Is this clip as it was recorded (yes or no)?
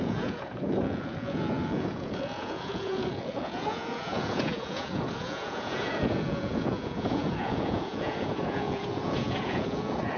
no